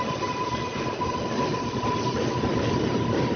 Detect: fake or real fake